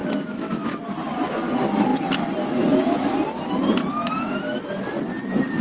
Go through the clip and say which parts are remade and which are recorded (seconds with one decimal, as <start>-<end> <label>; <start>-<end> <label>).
0.0-0.5 remade; 0.5-5.6 recorded